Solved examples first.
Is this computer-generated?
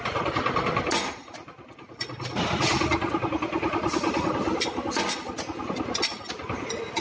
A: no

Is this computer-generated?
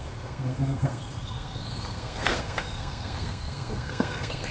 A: yes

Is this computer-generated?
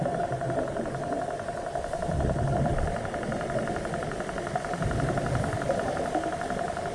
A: no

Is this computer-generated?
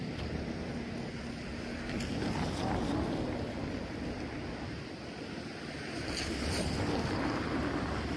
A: no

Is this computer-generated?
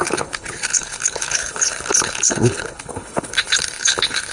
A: yes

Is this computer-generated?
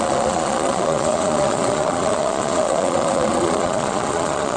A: yes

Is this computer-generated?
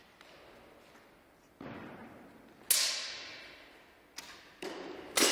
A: no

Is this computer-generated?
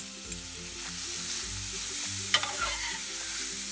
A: no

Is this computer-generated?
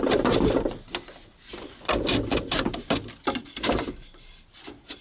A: no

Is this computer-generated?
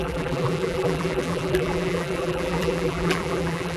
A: yes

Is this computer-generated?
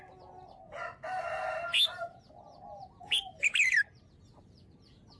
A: no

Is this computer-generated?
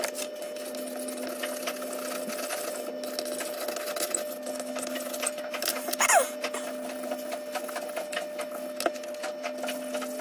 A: no